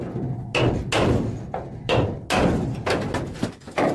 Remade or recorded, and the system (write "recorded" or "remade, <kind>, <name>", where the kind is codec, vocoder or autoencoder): recorded